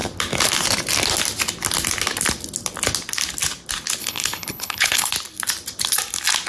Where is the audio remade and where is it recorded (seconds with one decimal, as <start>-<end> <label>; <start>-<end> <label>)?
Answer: 0.0-4.0 recorded; 4.0-5.1 remade; 5.1-6.5 recorded